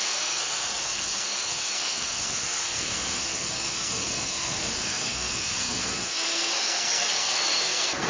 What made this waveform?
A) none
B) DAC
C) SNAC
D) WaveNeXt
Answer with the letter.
C